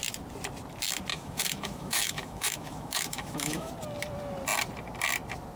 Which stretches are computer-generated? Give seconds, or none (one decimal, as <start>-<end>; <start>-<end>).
1.1-3.7